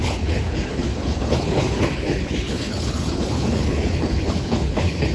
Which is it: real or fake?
fake